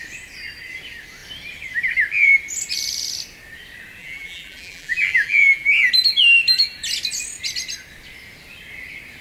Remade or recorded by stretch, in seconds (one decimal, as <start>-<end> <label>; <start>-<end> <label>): 0.0-4.0 recorded; 4.0-5.9 remade; 5.9-9.2 recorded

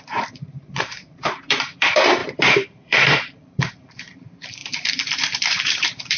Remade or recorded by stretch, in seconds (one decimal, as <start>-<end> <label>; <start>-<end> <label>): 0.0-6.2 remade